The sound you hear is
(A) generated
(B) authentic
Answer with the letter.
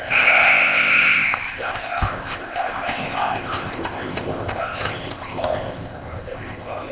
A